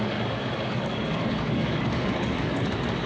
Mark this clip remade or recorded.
remade